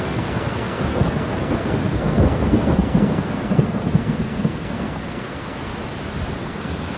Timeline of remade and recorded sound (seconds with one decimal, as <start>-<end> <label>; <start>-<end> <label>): 0.0-5.7 remade; 5.7-6.4 recorded; 6.4-7.0 remade